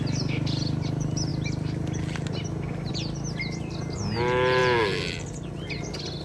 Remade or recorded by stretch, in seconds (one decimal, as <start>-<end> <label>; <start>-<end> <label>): 0.0-6.2 recorded